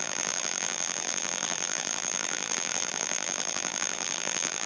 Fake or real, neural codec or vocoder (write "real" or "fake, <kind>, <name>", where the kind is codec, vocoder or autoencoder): fake, vocoder, BigVGAN v2